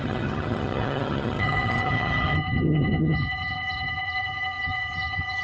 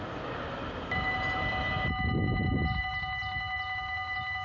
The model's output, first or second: first